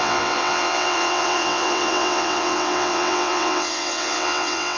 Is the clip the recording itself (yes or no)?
no